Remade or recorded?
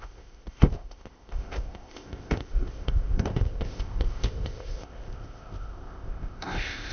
remade